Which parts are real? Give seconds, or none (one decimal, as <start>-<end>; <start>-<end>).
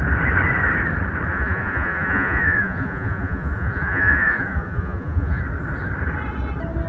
0.0-1.3; 5.4-6.9